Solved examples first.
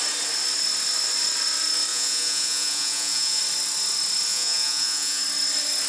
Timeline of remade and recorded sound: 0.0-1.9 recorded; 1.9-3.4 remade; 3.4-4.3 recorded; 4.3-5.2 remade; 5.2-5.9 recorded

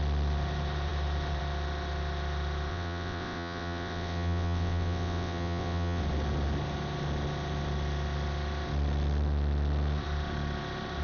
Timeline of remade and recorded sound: 0.0-2.7 recorded; 2.7-6.0 remade; 6.0-11.0 recorded

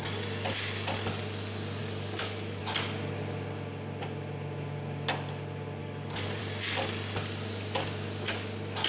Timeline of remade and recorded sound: 0.0-1.8 recorded; 1.8-2.6 remade; 2.6-5.8 recorded; 5.8-6.4 remade; 6.4-8.9 recorded